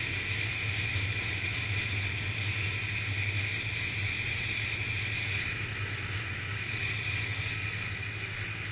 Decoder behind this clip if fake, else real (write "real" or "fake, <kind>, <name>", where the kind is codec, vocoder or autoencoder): real